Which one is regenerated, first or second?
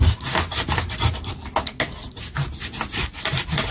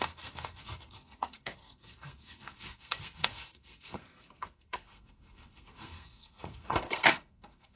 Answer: second